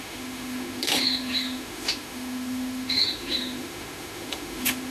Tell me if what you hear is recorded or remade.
remade